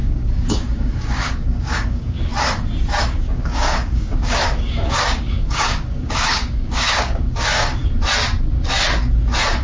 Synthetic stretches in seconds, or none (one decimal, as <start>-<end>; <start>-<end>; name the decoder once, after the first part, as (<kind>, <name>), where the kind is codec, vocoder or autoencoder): 0.0-2.3 (codec, DAC); 3.0-7.8